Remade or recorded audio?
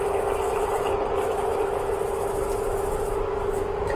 recorded